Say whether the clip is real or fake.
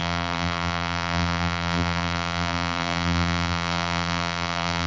fake